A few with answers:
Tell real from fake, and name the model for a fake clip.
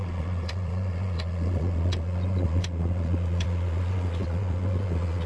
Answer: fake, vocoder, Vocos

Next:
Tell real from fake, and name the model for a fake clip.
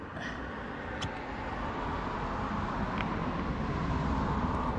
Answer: real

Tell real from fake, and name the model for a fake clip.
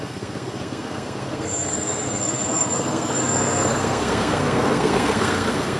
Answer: fake, codec, SNAC